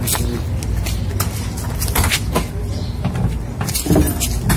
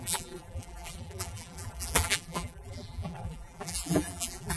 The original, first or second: first